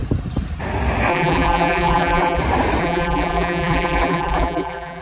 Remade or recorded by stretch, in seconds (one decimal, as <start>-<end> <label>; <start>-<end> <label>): 0.0-1.1 recorded; 1.1-2.4 remade; 2.4-2.8 recorded; 2.8-5.0 remade